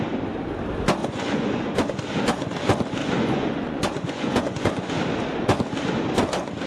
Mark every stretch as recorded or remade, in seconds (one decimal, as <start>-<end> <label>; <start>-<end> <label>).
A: 0.0-1.0 recorded; 1.0-1.7 remade; 1.7-3.0 recorded; 3.0-4.9 remade; 4.9-6.7 recorded